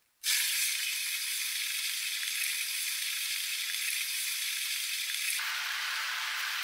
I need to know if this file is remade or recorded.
remade